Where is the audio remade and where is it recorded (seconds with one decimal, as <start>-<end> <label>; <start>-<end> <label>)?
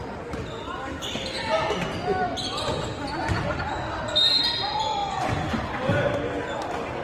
0.0-7.0 recorded